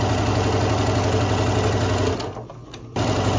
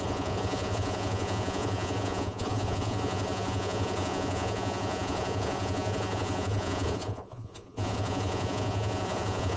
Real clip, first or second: first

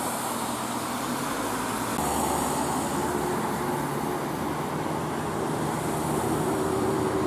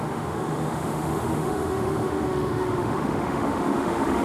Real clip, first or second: first